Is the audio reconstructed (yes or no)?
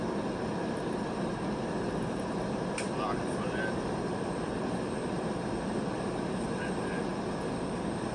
no